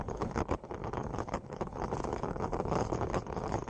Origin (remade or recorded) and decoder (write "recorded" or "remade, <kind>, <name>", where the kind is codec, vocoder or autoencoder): remade, codec, HILCodec